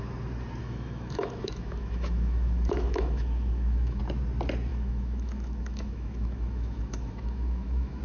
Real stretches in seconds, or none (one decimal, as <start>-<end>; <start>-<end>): 0.0-0.6; 4.0-4.7